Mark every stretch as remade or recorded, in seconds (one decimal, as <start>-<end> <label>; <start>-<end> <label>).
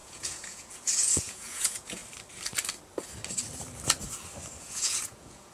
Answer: 0.0-2.0 remade; 2.0-4.6 recorded; 4.6-5.5 remade